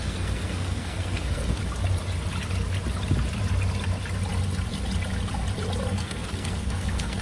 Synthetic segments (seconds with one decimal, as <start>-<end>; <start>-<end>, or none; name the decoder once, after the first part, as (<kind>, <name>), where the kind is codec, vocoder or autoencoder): 0.0-1.6 (codec, SNAC); 5.9-7.2